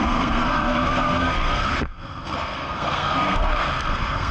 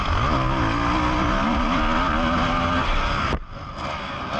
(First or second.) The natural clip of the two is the second